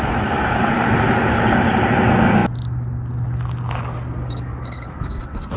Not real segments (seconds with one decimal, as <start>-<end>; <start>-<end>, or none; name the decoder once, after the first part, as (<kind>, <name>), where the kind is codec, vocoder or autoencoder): 4.2-5.6 (codec, SNAC)